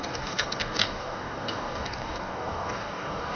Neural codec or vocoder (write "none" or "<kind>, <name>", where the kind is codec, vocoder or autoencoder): codec, DAC